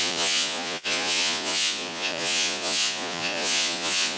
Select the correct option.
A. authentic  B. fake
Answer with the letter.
B